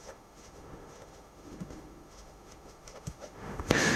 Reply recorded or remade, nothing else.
remade